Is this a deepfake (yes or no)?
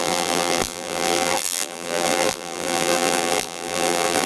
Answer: yes